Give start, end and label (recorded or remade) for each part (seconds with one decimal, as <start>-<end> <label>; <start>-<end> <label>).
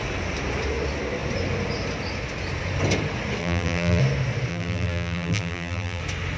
0.0-3.4 recorded; 3.4-4.0 remade; 4.0-4.5 recorded; 4.5-6.0 remade; 6.0-6.4 recorded